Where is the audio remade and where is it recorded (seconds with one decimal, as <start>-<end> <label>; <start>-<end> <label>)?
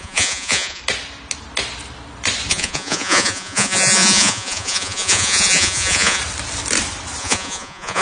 0.0-0.8 remade; 0.8-2.5 recorded; 2.5-6.2 remade; 6.2-7.2 recorded; 7.2-8.0 remade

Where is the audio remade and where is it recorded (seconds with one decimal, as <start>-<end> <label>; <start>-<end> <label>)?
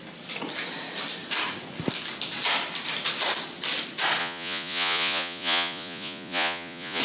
0.0-4.2 recorded; 4.2-7.0 remade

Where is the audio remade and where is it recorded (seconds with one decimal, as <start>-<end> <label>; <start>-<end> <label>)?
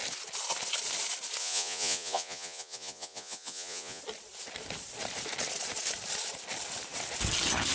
0.0-1.4 recorded; 1.4-4.0 remade; 4.0-7.7 recorded